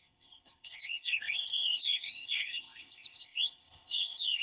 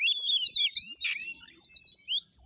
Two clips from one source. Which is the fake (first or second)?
first